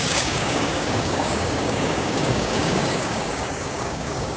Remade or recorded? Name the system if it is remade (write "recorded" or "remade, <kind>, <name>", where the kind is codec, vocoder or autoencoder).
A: remade, codec, DAC